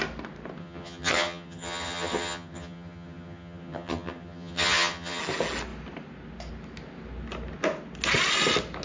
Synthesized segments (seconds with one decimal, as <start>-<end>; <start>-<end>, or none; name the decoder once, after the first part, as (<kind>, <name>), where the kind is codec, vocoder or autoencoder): 0.6-5.2 (vocoder, HiFi-GAN)